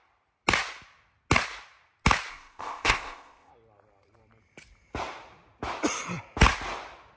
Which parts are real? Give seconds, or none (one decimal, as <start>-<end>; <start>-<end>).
0.0-2.3; 3.5-7.2